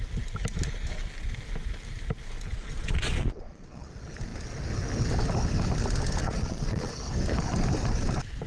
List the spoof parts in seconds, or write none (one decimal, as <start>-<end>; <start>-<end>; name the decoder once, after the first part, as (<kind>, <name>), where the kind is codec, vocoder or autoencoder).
2.5-3.9 (vocoder, Vocos); 6.2-6.9